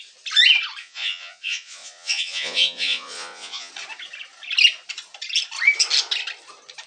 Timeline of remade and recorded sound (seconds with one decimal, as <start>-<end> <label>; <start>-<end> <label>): 0.0-0.8 recorded; 0.8-3.7 remade; 3.7-6.9 recorded